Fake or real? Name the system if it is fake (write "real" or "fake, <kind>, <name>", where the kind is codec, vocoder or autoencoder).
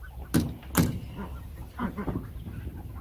real